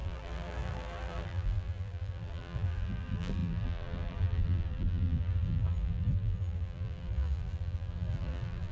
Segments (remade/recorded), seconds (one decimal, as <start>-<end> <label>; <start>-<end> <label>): 0.0-8.7 remade